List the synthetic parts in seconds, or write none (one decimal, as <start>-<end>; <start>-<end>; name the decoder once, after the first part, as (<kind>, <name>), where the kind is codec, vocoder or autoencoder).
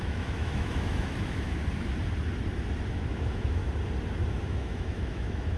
0.0-1.6 (autoencoder, DAC-VAE); 2.9-3.6; 4.3-5.6